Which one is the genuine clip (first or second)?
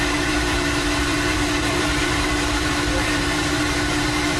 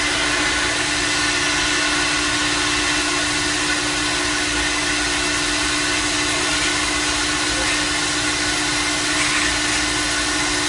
second